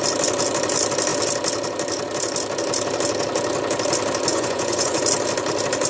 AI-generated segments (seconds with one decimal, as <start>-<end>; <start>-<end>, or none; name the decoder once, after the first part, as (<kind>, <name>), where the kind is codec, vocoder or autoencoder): 4.3-5.0 (vocoder, Vocos)